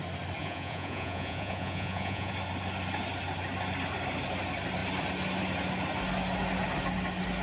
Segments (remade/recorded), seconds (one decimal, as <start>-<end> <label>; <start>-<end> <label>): 0.0-0.4 recorded; 0.4-2.3 remade; 2.3-7.4 recorded